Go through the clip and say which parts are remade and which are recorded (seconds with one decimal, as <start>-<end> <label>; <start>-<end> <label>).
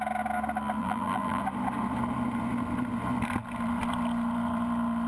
0.0-0.8 recorded; 0.8-1.4 remade; 1.4-5.1 recorded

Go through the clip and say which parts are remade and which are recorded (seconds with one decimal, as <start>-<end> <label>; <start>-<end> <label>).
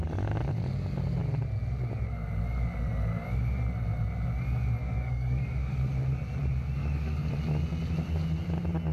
0.0-4.8 recorded; 4.8-5.9 remade; 5.9-6.8 recorded; 6.8-7.3 remade; 7.3-8.9 recorded